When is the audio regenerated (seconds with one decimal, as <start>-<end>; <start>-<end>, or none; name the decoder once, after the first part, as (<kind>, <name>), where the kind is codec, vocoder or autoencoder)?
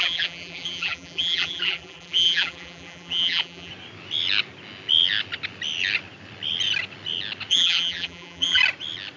0.0-3.7 (vocoder, BigVGAN v2); 7.5-8.6